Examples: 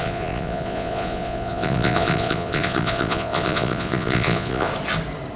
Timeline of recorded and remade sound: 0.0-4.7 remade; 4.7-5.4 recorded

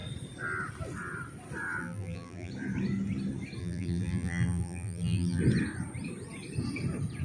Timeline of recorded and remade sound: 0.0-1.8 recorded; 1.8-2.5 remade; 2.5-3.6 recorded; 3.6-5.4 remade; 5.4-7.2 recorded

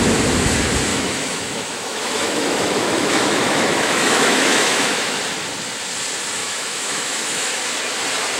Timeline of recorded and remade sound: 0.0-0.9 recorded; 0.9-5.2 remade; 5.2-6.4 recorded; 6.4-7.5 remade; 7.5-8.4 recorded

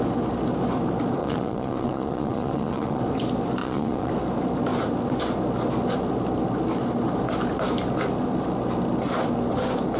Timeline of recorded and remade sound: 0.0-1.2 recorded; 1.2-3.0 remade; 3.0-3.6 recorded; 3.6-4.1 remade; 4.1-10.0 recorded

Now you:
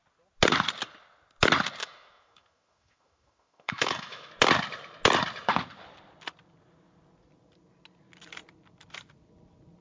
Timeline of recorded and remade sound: 0.0-1.8 recorded; 1.8-4.3 remade; 4.3-9.8 recorded

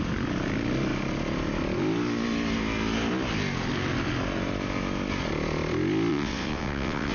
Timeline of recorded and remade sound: 0.0-6.1 recorded; 6.1-7.1 remade

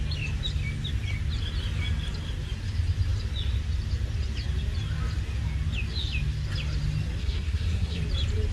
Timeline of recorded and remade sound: 0.0-7.2 recorded; 7.2-8.0 remade; 8.0-8.5 recorded